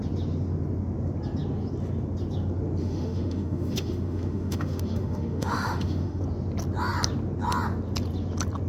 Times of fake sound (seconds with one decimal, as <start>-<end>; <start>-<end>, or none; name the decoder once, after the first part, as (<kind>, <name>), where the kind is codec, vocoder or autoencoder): 2.8-6.2 (autoencoder, DAC-VAE)